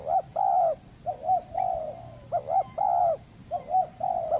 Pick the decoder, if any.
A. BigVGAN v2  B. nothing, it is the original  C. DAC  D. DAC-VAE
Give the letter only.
A